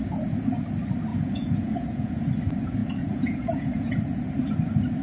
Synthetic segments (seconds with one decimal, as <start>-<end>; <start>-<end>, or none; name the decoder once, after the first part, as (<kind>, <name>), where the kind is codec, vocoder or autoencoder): 1.1-2.3 (vocoder, Vocos); 2.8-3.9